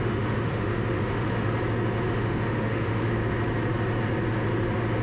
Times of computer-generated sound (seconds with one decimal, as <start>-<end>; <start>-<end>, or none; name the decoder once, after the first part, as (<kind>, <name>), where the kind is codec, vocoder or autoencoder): 0.0-1.5 (autoencoder, DAC-VAE); 2.1-3.2